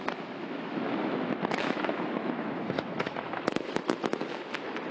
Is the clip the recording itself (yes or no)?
no